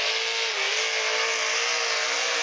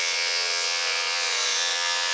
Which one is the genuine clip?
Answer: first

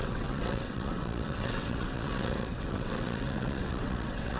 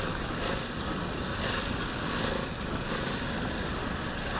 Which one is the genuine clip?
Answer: second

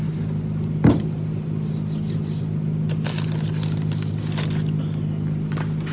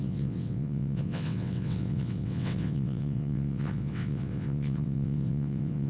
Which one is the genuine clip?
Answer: first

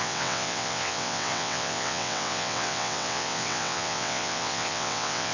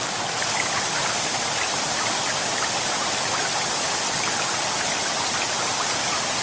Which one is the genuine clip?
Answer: second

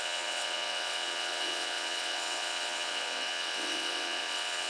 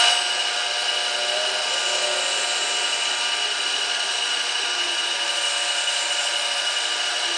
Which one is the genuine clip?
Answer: second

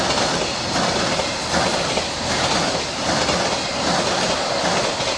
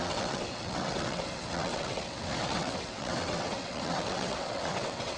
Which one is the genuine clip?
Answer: first